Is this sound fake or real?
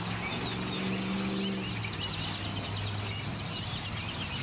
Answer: real